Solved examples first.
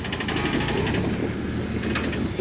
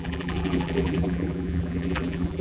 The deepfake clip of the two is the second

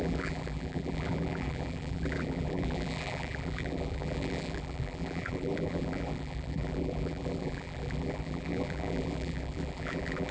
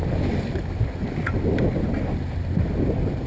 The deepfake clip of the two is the first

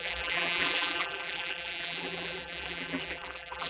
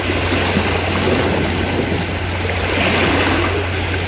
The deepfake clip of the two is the first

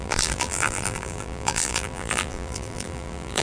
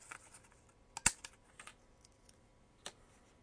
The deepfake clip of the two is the first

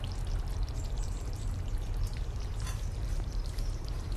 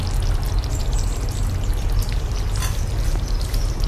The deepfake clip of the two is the first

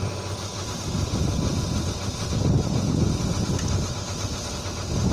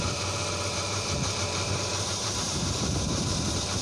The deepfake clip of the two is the second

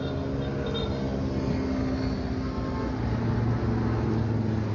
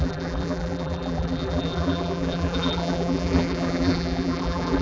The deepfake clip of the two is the second